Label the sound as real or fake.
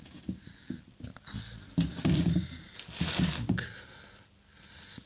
real